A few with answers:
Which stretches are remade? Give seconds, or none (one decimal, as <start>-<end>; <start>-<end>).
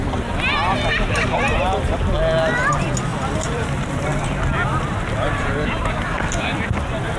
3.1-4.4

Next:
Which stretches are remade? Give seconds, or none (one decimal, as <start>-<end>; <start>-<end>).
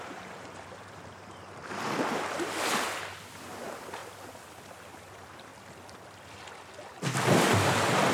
0.0-4.0; 4.7-5.5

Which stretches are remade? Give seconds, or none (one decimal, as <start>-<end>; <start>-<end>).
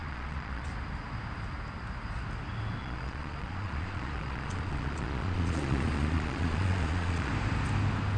0.0-0.7; 2.8-7.3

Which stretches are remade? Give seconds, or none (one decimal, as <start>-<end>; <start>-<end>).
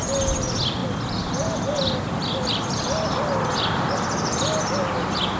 none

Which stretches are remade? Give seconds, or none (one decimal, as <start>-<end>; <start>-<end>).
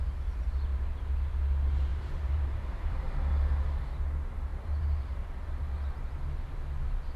1.9-3.1; 4.5-5.7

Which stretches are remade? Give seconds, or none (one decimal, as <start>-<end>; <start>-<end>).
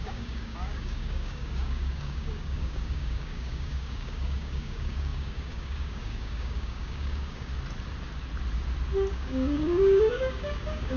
0.0-7.5; 9.1-11.0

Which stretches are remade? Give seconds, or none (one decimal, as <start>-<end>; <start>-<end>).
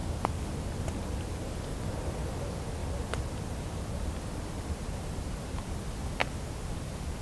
2.8-5.7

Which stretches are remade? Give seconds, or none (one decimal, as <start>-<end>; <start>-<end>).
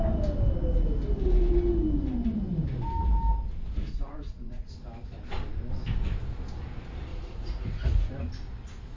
3.9-4.7; 7.1-8.1